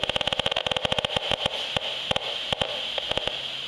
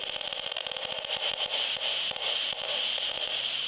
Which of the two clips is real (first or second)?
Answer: first